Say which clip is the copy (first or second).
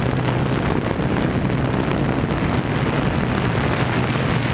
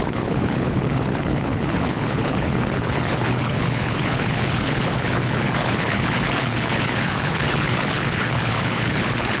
second